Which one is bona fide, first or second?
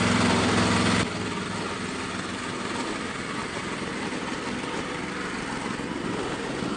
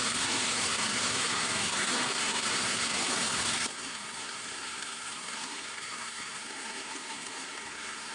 first